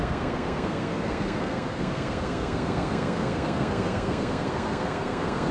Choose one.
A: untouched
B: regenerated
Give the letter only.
B